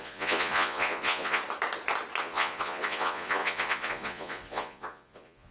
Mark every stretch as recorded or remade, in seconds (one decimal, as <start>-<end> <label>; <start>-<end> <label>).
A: 0.0-1.4 remade; 1.4-2.2 recorded; 2.2-5.5 remade